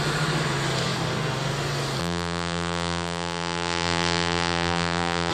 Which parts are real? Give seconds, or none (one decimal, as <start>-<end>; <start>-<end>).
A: 0.0-2.0